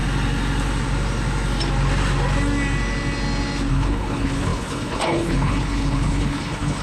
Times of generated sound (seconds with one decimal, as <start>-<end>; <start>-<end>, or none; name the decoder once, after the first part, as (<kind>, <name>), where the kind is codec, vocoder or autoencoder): 3.7-6.8 (codec, HILCodec)